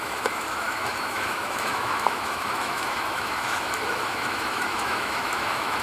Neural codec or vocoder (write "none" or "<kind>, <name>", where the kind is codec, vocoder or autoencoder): autoencoder, DAC-VAE